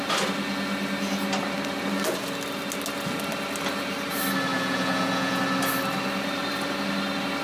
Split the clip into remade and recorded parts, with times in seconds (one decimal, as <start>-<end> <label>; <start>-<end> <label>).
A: 0.0-4.5 recorded; 4.5-5.4 remade; 5.4-7.4 recorded